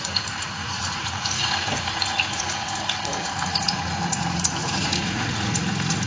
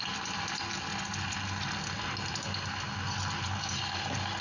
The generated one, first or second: first